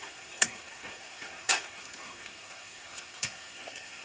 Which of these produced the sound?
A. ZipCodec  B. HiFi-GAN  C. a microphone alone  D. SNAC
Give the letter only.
D